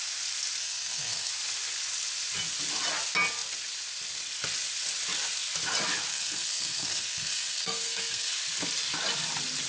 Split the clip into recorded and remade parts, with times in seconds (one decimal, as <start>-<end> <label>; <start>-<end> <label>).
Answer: 0.0-0.6 recorded; 0.6-1.3 remade; 1.3-6.1 recorded; 6.1-8.3 remade; 8.3-9.7 recorded

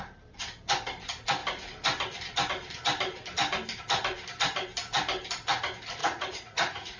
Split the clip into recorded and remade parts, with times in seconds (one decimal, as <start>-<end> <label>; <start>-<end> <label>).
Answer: 0.0-6.0 recorded; 6.0-7.0 remade

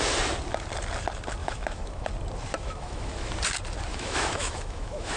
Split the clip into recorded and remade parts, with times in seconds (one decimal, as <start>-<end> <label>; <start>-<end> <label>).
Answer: 0.0-1.4 recorded; 1.4-2.1 remade; 2.1-2.5 recorded; 2.5-3.3 remade; 3.3-3.9 recorded; 3.9-5.2 remade

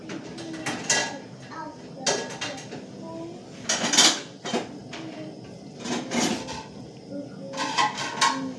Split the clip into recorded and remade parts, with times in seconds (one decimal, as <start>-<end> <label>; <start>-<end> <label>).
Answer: 0.0-1.0 recorded; 1.0-1.8 remade; 1.8-8.6 recorded

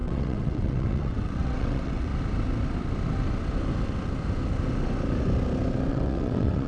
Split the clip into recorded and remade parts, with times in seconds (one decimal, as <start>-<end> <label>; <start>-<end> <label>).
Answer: 0.0-2.1 remade; 2.1-5.9 recorded; 5.9-6.7 remade

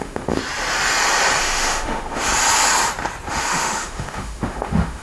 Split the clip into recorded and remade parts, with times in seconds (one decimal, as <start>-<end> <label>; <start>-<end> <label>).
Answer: 0.0-0.4 remade; 0.4-1.4 recorded; 1.4-2.3 remade; 2.3-3.3 recorded; 3.3-5.0 remade

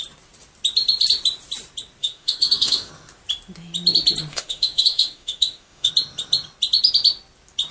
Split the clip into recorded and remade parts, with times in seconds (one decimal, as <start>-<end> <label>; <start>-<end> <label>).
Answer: 0.0-2.0 recorded; 2.0-2.9 remade; 2.9-4.3 recorded; 4.3-5.9 remade; 5.9-7.7 recorded

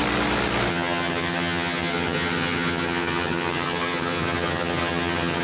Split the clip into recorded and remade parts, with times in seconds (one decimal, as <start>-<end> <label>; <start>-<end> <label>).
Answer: 0.0-0.7 recorded; 0.7-5.4 remade